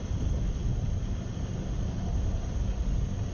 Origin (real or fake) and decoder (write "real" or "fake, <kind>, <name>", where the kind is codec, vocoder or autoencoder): real